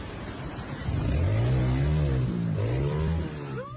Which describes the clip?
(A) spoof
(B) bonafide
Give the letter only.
B